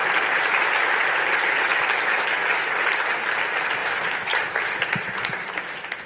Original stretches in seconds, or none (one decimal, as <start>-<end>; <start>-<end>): 0.0-3.8; 4.4-6.1